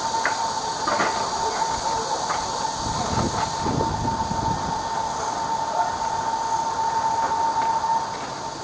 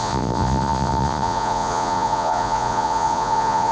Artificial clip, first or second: second